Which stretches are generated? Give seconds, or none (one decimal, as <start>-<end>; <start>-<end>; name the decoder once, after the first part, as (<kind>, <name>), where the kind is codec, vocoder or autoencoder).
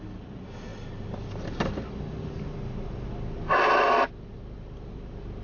none